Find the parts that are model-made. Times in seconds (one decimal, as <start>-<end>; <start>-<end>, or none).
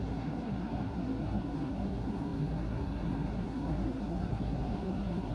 0.0-5.3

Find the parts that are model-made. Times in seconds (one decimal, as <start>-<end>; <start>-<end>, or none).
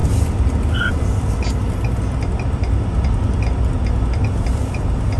none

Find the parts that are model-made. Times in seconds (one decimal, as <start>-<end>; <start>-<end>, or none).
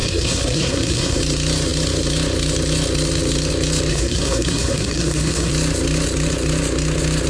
0.0-1.2; 3.9-5.5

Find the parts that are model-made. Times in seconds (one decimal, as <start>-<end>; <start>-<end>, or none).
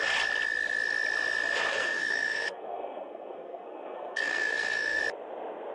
1.7-5.0